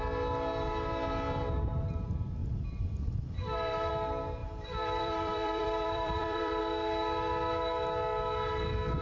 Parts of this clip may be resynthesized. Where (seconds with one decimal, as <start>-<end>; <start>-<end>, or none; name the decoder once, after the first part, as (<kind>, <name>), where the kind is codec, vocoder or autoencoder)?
2.4-3.9 (vocoder, BigVGAN v2); 4.4-6.6

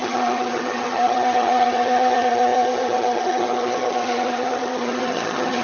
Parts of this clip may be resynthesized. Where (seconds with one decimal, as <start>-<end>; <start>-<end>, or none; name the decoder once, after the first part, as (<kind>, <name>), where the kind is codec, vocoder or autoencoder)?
0.0-5.6 (vocoder, HiFi-GAN)

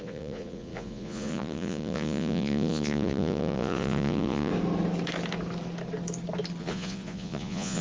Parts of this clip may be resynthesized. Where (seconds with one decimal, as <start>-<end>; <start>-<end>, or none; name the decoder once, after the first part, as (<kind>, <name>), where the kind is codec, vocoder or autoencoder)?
0.0-4.5 (vocoder, Vocos); 6.6-7.8

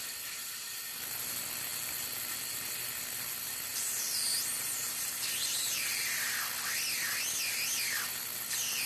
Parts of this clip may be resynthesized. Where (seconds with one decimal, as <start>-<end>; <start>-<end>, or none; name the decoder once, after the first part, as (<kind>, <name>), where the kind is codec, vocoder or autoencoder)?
3.7-6.3 (vocoder, BigVGAN v2)